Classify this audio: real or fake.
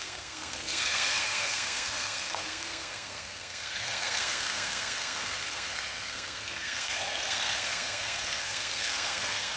fake